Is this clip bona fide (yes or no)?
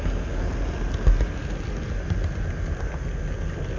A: yes